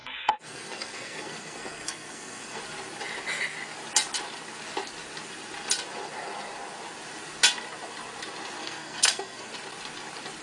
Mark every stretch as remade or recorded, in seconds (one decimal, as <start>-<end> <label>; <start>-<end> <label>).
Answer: 0.0-2.6 remade; 2.6-8.6 recorded; 8.6-9.5 remade; 9.5-10.4 recorded